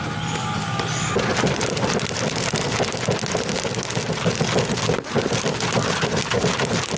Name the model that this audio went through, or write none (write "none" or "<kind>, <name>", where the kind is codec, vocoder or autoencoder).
none